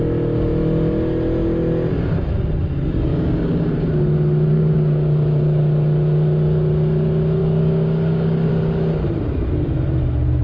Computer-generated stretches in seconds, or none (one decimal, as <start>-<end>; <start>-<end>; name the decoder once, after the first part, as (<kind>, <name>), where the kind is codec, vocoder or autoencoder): 3.1-4.0 (codec, DAC); 4.5-5.6; 7.4-8.5